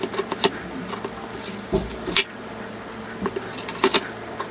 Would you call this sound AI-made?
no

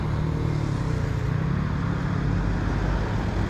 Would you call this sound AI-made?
no